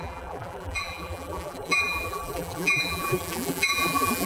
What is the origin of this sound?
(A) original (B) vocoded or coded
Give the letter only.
B